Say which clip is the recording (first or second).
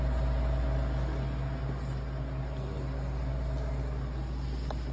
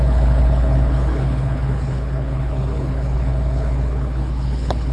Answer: first